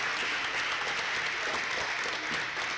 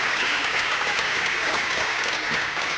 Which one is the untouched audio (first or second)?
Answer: first